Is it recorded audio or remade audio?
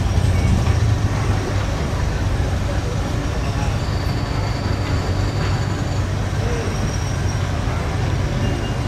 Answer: recorded